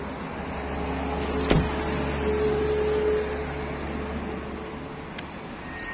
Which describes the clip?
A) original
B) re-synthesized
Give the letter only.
A